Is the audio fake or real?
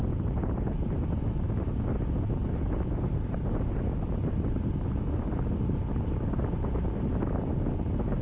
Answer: real